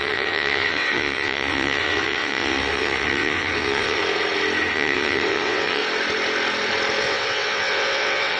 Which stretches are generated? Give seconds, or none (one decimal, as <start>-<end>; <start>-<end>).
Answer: 0.0-4.0; 4.7-5.8; 7.0-8.4